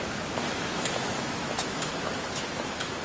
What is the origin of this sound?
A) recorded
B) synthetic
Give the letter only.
B